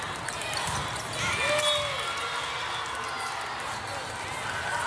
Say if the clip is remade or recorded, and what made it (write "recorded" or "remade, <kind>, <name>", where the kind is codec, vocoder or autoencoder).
recorded